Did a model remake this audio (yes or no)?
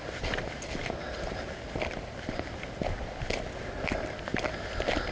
no